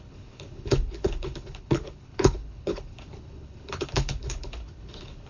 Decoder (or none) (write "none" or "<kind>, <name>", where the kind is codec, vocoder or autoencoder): codec, HILCodec